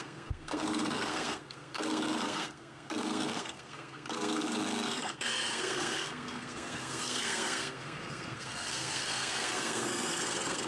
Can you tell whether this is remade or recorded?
remade